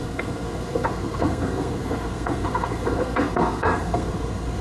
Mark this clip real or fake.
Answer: fake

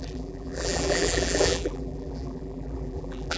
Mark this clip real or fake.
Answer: fake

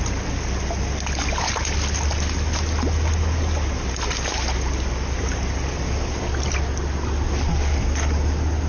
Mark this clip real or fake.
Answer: real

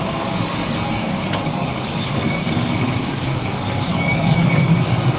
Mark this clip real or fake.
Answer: fake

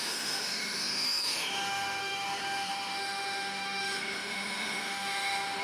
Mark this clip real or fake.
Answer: fake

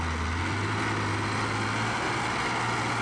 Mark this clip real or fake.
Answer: real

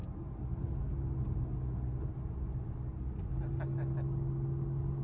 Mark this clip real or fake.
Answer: real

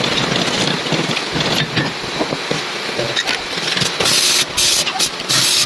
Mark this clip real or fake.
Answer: real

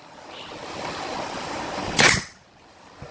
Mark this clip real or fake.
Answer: real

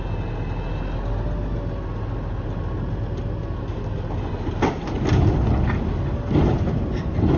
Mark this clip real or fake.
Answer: real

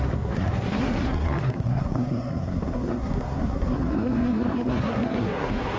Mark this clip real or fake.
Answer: fake